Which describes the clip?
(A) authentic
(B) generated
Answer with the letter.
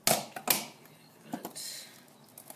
A